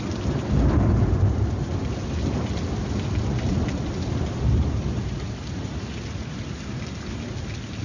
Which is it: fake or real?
real